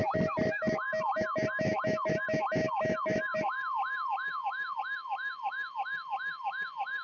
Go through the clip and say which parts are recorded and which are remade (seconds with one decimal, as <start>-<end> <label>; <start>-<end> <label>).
0.0-3.3 recorded; 3.3-4.8 remade; 4.8-7.0 recorded